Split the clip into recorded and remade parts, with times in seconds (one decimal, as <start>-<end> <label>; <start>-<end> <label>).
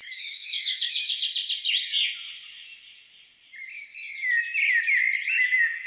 0.0-1.2 remade; 1.2-5.9 recorded